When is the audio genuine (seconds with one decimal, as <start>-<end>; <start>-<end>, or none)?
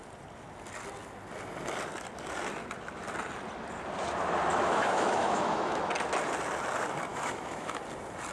0.0-4.5; 5.9-7.1; 7.8-8.3